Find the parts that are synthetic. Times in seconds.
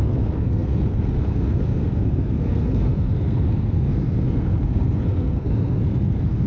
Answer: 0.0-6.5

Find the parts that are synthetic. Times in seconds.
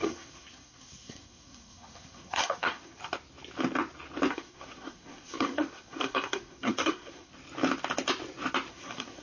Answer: 0.0-3.0; 4.3-7.3; 8.7-9.2